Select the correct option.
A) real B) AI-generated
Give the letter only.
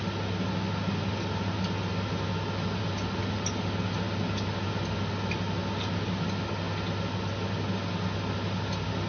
A